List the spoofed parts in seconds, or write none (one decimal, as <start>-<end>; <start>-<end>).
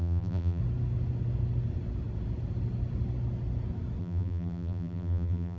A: 0.0-0.6; 4.0-5.6